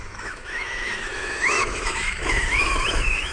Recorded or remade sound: remade